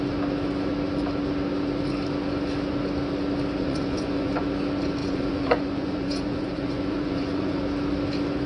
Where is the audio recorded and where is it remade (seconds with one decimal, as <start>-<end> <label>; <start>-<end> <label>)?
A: 0.0-3.6 recorded; 3.6-4.4 remade; 4.4-5.0 recorded; 5.0-7.6 remade; 7.6-8.5 recorded